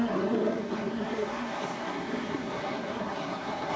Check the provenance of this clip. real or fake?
fake